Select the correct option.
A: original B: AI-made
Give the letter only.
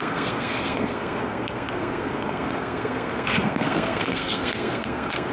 B